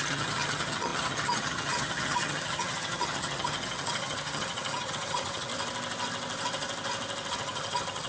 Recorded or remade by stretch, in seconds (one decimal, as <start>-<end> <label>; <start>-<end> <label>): 0.0-5.5 remade; 5.5-7.3 recorded; 7.3-8.1 remade

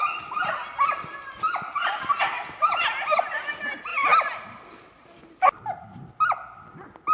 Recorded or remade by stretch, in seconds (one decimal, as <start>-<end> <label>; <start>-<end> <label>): 0.0-7.1 recorded

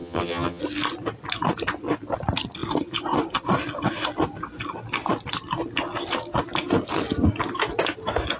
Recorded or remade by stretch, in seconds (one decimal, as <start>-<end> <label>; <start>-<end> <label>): 0.0-0.6 remade; 0.6-8.4 recorded

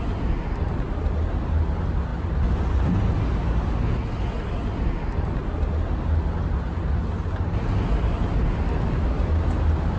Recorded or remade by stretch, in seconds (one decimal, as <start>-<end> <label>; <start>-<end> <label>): 0.0-10.0 recorded

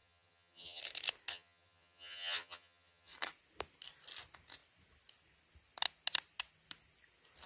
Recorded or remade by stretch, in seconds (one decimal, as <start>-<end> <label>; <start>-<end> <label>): 0.0-0.8 remade; 0.8-1.3 recorded; 1.3-3.1 remade; 3.1-7.5 recorded

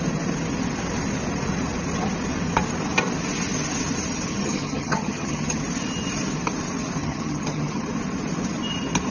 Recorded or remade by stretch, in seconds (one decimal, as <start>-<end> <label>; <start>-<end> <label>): 0.0-4.3 recorded; 4.3-5.6 remade; 5.6-7.0 recorded; 7.0-7.8 remade; 7.8-9.1 recorded